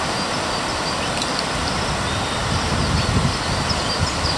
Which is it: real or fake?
real